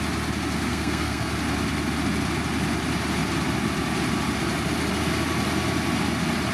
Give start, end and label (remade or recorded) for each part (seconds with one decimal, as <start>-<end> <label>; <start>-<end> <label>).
0.0-0.7 recorded; 0.7-1.3 remade; 1.3-6.5 recorded